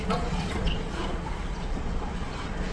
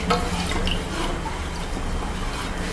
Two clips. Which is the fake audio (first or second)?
first